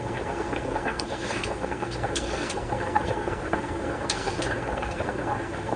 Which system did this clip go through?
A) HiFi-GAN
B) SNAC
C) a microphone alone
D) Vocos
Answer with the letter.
B